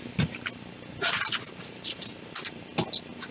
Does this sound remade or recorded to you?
recorded